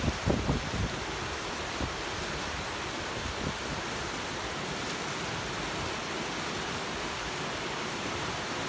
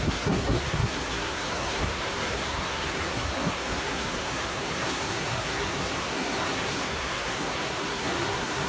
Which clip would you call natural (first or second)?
first